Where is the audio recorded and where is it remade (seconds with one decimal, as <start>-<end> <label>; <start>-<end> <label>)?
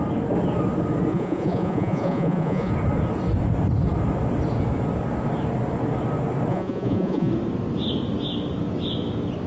0.0-1.1 recorded; 1.1-2.7 remade; 2.7-6.5 recorded; 6.5-7.3 remade; 7.3-9.5 recorded